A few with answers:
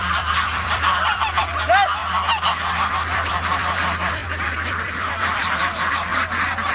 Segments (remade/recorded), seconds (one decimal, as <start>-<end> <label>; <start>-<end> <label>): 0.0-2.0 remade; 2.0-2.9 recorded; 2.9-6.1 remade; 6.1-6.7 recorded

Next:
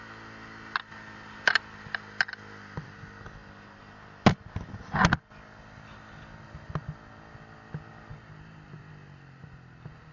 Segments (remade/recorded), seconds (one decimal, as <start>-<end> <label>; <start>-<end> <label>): 0.0-10.1 recorded

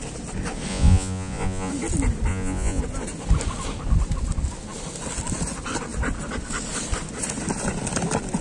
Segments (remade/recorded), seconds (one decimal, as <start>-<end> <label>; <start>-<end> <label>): 0.0-0.7 recorded; 0.7-1.7 remade; 1.7-2.3 recorded; 2.3-2.8 remade; 2.8-8.4 recorded